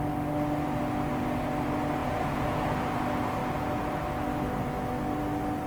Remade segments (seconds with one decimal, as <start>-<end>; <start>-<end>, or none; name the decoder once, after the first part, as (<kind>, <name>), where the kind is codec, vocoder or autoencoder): 2.0-2.6 (vocoder, Vocos)